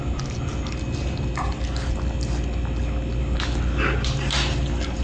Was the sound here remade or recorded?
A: recorded